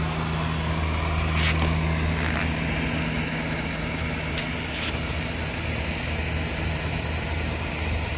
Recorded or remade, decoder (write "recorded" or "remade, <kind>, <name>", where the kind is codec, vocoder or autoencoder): recorded